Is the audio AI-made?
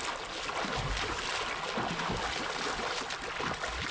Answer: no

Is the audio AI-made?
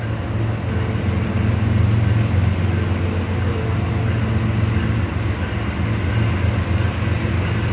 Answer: no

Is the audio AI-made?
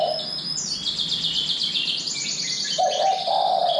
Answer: no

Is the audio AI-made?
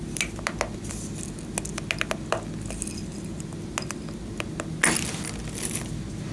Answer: no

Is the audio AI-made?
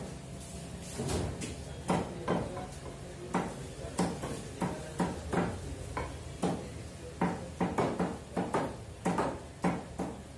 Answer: no